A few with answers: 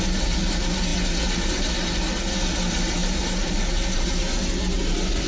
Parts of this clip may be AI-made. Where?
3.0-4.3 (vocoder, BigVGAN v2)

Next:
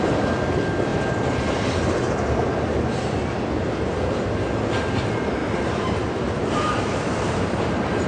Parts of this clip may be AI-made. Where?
5.4-7.4 (vocoder, BigVGAN v2)

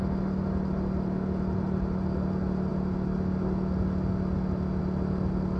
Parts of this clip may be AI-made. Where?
none

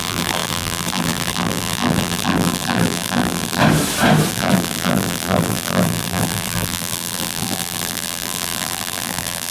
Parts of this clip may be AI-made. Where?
0.0-3.6 (vocoder, BigVGAN v2); 4.3-9.5

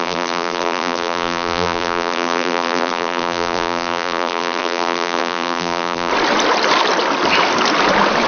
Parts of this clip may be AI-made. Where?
0.0-6.1 (vocoder, BigVGAN v2)

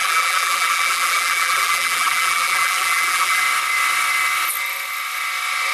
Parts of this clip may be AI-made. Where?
0.0-3.4 (vocoder, BigVGAN v2)

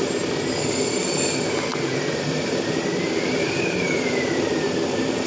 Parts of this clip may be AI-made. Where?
1.7-5.3 (vocoder, BigVGAN v2)